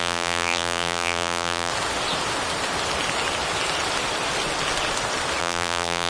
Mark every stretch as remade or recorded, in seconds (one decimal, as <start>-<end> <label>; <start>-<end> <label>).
0.0-1.7 remade; 1.7-5.4 recorded; 5.4-6.1 remade

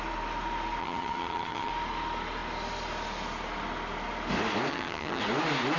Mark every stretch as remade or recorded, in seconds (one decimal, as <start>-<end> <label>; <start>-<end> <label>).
0.0-0.8 recorded; 0.8-1.7 remade; 1.7-4.7 recorded; 4.7-5.2 remade; 5.2-5.8 recorded

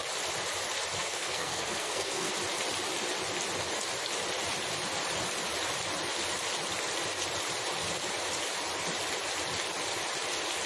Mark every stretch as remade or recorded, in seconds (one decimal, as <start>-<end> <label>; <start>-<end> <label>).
0.0-0.9 recorded; 0.9-2.3 remade; 2.3-10.7 recorded

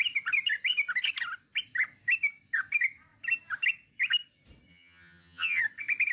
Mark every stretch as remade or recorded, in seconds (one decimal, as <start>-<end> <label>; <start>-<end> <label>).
0.0-4.7 recorded; 4.7-5.6 remade; 5.6-6.1 recorded

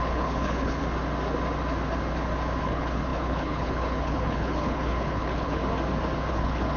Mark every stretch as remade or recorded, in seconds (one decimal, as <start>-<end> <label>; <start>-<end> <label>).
0.0-0.8 remade; 0.8-2.6 recorded; 2.6-5.6 remade; 5.6-6.3 recorded; 6.3-6.8 remade